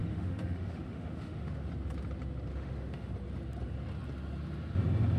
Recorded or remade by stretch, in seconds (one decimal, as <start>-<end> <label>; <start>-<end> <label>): 0.0-1.7 remade; 1.7-2.5 recorded; 2.5-3.1 remade; 3.1-5.2 recorded